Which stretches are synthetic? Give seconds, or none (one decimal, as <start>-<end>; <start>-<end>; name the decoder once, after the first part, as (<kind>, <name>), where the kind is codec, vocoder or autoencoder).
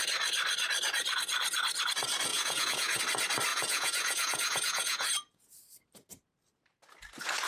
2.3-3.0 (vocoder, Vocos); 3.5-5.6